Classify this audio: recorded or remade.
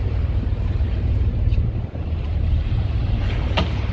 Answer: remade